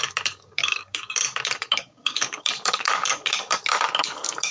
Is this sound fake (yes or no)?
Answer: yes